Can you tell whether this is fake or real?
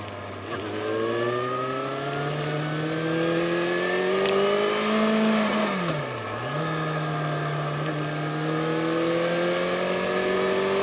real